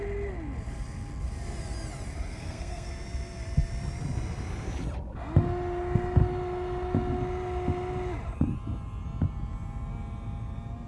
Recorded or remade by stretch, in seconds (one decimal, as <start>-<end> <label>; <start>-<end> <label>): 0.0-2.3 recorded; 2.3-2.9 remade; 2.9-10.9 recorded